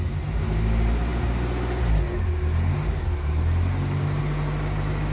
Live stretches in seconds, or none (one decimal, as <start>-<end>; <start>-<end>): 0.0-5.1